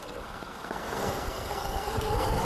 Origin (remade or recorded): remade